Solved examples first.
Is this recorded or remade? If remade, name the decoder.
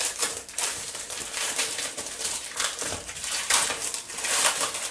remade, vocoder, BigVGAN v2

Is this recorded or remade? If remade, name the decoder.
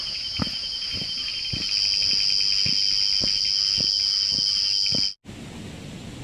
recorded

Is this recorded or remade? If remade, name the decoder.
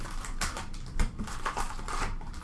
remade, vocoder, BigVGAN v2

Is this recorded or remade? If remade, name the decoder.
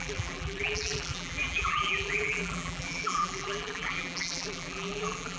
remade, vocoder, BigVGAN v2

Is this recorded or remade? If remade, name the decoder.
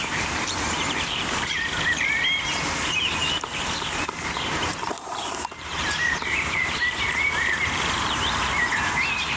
remade, vocoder, BigVGAN v2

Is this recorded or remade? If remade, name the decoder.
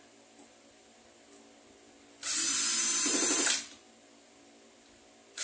recorded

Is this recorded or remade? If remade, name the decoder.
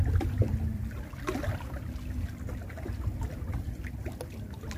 remade, vocoder, BigVGAN v2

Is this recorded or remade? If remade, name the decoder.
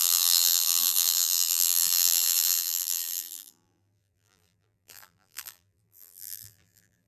remade, vocoder, BigVGAN v2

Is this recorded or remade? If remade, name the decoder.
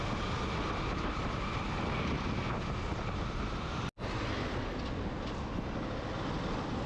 recorded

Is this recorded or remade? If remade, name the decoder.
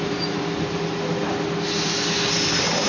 recorded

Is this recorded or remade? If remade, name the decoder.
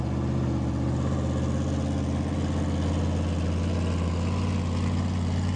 recorded